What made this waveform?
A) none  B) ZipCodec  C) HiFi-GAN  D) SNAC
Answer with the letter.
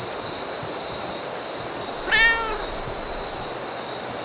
A